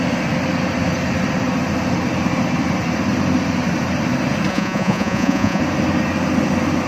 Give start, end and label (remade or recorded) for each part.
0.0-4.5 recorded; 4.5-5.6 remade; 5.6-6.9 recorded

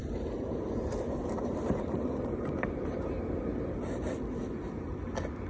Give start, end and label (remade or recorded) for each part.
0.0-3.3 remade; 3.3-5.5 recorded

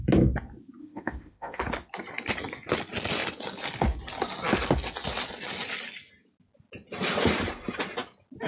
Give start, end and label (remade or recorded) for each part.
0.0-0.8 recorded; 0.8-1.6 remade; 1.6-8.5 recorded

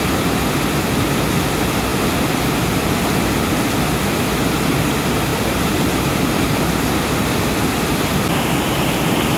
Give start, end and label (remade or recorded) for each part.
0.0-5.3 recorded; 5.3-6.6 remade; 6.6-9.4 recorded

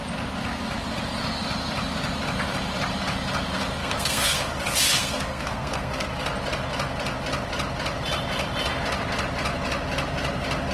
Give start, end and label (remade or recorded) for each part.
0.0-3.8 recorded; 3.8-4.4 remade; 4.4-5.0 recorded; 5.0-6.1 remade; 6.1-10.7 recorded

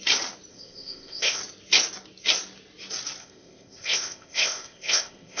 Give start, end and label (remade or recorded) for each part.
0.0-0.5 recorded; 0.5-1.4 remade; 1.4-3.2 recorded; 3.2-5.4 remade